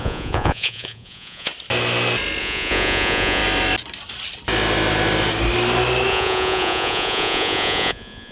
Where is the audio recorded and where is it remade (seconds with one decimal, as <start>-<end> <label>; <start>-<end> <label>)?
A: 0.0-1.5 remade; 1.5-2.4 recorded; 2.4-3.4 remade; 3.4-6.1 recorded; 6.1-8.3 remade